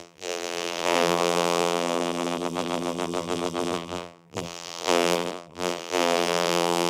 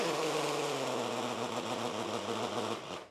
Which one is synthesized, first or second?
first